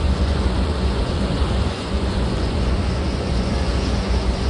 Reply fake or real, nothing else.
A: fake